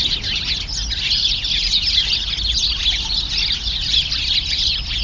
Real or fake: real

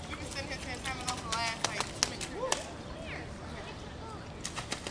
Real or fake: real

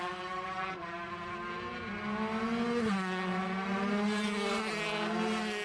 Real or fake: real